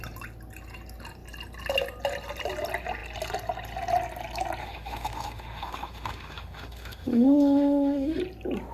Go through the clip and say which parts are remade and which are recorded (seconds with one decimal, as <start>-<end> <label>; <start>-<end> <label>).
0.0-4.6 recorded; 4.6-8.2 remade; 8.2-8.7 recorded